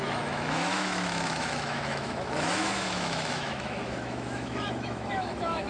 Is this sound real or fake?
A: fake